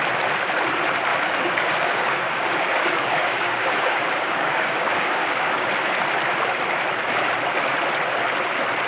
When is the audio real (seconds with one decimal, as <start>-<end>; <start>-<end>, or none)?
0.0-1.1; 5.7-8.9